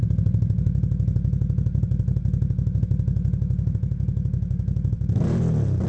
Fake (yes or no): no